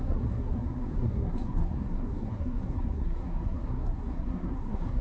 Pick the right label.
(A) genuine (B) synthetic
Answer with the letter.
B